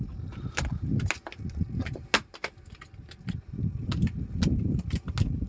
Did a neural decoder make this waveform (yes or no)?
no